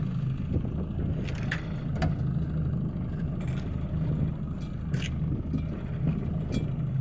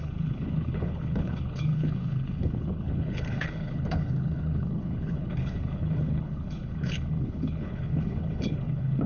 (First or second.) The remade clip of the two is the second